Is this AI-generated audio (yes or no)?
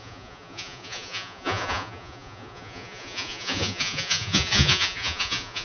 yes